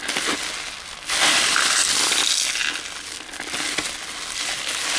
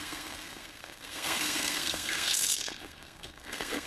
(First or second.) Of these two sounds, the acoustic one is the first